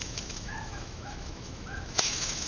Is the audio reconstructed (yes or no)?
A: yes